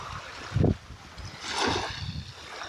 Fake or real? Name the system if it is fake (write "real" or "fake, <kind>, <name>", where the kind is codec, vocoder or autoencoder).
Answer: real